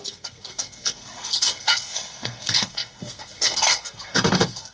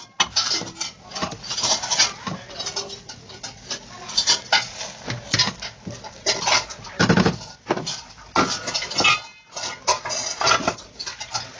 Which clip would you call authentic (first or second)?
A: second